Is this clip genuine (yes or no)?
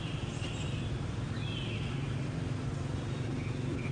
yes